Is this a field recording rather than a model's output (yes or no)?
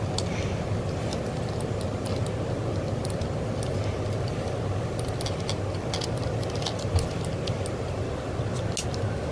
yes